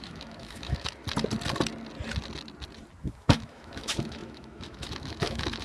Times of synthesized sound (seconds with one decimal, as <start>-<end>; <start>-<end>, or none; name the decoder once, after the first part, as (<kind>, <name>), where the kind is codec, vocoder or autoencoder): 0.0-1.0 (autoencoder, DAC-VAE); 3.0-5.6